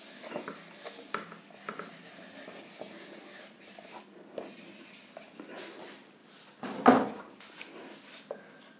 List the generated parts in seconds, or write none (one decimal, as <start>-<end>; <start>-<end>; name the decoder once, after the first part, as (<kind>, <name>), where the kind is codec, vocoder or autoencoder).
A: none